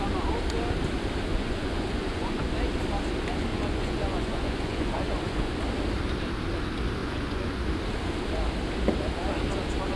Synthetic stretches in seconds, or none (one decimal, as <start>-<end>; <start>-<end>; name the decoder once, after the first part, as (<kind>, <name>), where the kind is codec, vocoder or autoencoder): 1.3-2.5 (vocoder, Vocos); 3.5-5.6; 7.0-7.6

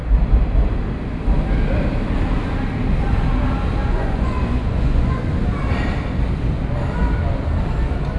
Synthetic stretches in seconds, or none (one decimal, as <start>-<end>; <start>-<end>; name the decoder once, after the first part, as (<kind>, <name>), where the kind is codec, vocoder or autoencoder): 3.8-5.2 (vocoder, Vocos)

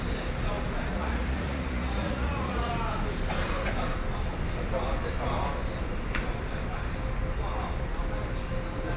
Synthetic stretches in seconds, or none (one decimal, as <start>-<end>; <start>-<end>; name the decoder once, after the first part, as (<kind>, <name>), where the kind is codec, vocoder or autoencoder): 0.9-2.7 (vocoder, Vocos)